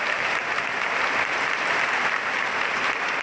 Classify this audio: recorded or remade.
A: remade